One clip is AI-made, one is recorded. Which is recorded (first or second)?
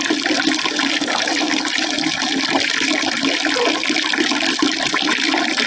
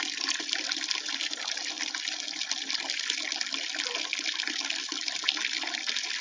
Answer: second